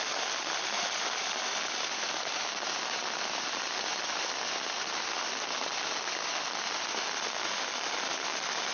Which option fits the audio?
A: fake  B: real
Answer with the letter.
B